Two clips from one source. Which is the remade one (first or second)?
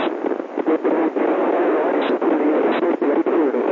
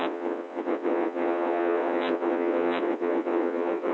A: second